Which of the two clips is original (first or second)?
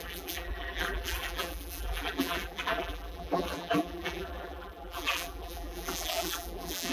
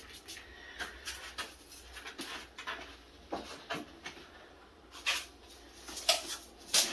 second